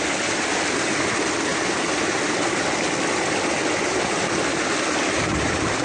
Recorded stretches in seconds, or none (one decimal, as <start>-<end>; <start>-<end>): 0.0-5.8